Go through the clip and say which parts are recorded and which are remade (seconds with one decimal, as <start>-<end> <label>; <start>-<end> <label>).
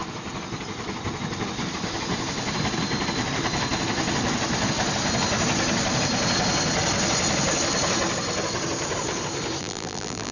0.0-9.6 recorded; 9.6-10.3 remade